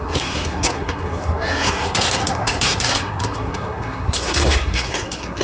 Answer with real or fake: fake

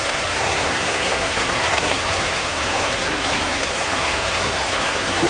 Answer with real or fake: fake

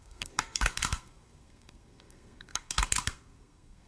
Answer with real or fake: fake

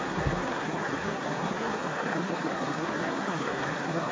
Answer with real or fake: fake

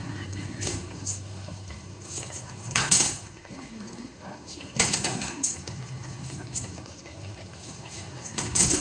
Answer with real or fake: fake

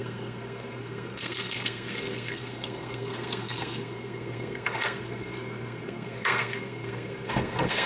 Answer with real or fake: fake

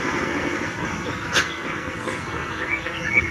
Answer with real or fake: fake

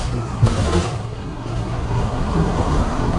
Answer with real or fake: fake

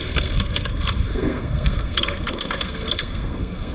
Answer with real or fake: fake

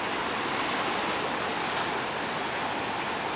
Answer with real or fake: real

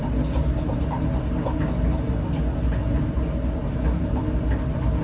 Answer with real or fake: real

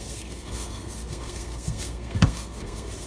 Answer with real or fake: fake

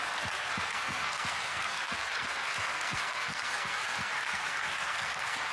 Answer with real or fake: fake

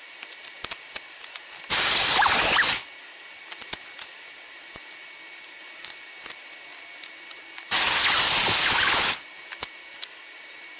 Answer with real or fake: real